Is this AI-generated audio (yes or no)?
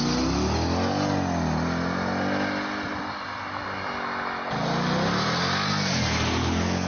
no